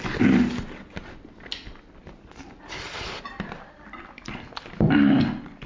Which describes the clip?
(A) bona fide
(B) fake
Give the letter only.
A